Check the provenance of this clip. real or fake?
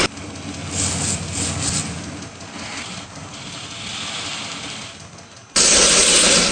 real